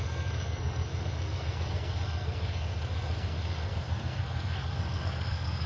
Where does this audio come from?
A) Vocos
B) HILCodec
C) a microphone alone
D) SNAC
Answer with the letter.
D